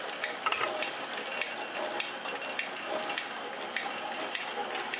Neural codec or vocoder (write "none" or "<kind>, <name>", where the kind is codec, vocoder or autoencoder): none